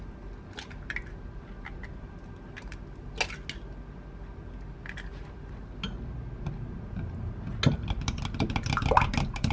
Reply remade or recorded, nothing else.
recorded